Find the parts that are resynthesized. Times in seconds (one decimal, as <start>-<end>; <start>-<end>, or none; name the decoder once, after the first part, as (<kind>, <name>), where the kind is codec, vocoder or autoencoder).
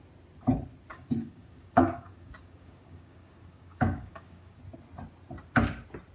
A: 0.9-4.6 (codec, DAC)